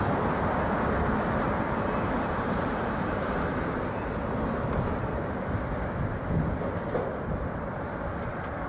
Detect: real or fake fake